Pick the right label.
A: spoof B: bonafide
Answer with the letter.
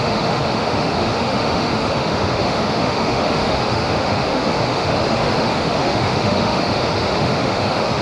A